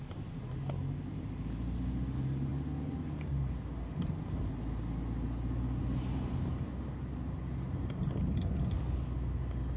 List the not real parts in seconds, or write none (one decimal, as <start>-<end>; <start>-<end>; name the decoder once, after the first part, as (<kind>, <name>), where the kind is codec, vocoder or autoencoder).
none

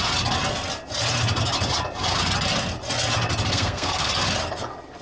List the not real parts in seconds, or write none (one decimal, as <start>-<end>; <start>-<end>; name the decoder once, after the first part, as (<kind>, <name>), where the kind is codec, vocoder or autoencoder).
3.5-4.1 (codec, SNAC)

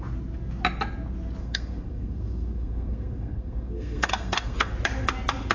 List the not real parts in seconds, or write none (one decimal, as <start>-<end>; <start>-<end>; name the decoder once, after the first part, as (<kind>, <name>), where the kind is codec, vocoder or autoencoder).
1.4-4.7 (codec, SNAC)